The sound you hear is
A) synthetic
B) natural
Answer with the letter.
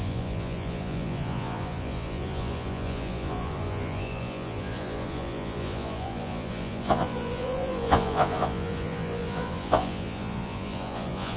A